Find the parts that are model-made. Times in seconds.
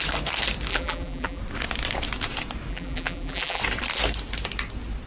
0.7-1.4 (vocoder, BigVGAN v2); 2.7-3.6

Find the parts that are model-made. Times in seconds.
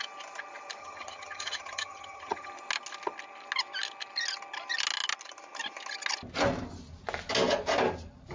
0.8-2.5 (vocoder, HiFi-GAN)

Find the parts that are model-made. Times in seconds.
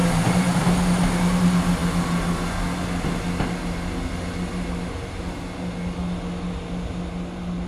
0.0-0.6 (vocoder, BigVGAN v2)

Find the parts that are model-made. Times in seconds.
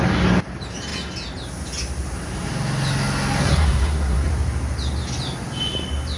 3.4-4.3 (codec, SNAC)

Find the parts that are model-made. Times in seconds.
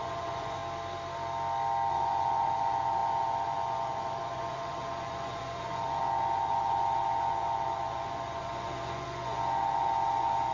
0.0-0.6 (vocoder, Vocos); 1.9-10.5